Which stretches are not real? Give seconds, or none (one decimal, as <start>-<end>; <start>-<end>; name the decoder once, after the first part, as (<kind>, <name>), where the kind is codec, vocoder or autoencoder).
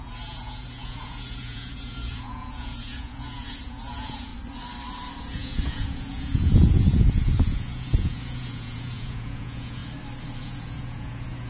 0.0-4.3 (vocoder, Vocos); 5.2-9.8; 10.4-11.5